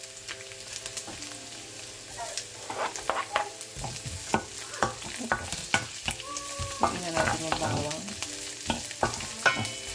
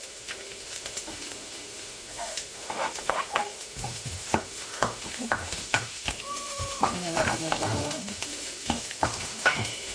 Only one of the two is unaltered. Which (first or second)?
first